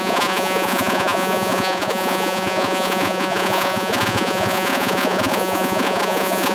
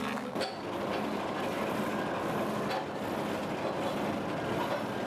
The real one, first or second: second